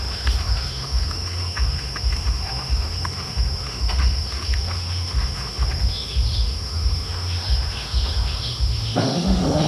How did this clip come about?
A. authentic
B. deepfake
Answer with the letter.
B